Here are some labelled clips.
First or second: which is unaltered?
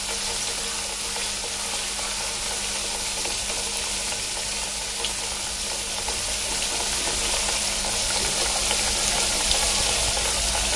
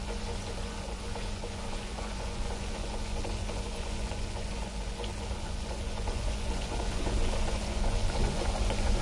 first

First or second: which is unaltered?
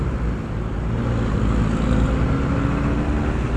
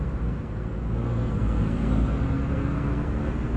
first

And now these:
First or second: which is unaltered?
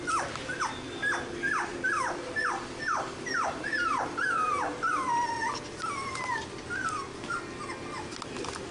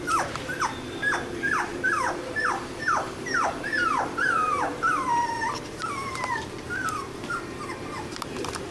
first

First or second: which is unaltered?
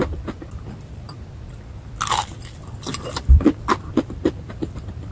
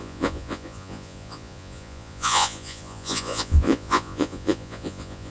first